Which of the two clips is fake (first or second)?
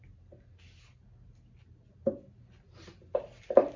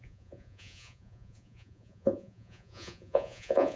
second